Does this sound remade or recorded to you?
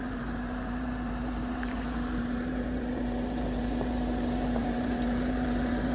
remade